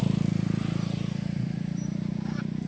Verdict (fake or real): real